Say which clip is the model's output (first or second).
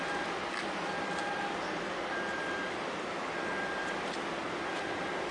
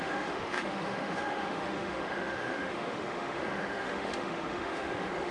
second